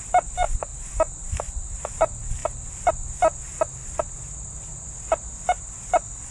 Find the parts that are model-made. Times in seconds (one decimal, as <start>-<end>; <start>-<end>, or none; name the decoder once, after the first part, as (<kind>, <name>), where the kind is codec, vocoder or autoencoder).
none